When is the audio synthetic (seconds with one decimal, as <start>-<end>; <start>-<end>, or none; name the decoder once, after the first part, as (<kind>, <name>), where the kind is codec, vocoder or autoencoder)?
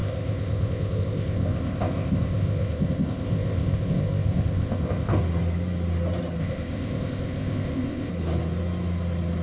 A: 0.0-5.2 (codec, ZipCodec); 6.4-8.1